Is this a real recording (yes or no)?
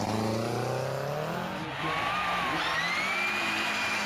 yes